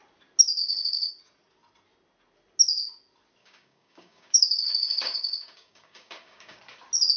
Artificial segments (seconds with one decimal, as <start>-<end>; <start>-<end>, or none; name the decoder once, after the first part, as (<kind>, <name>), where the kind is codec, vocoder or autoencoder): 0.6-1.1 (codec, DAC); 3.4-6.6